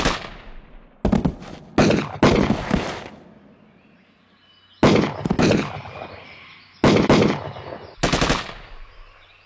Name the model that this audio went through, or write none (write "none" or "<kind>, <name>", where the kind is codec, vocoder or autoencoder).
none